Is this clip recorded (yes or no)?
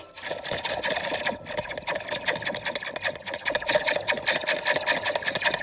yes